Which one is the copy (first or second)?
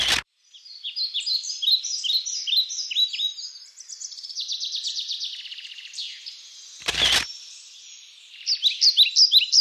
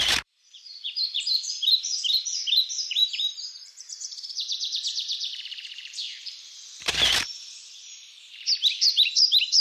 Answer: second